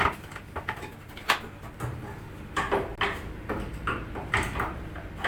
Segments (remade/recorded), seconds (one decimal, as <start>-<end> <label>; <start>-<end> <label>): 0.0-0.9 remade; 0.9-2.2 recorded; 2.2-2.9 remade; 2.9-3.5 recorded; 3.5-5.3 remade